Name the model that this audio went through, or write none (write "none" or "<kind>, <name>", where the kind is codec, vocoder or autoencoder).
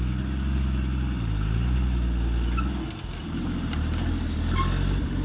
none